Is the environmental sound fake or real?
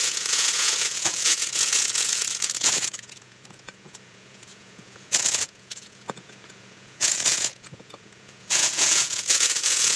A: fake